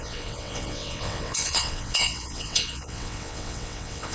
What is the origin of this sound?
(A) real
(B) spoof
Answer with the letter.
B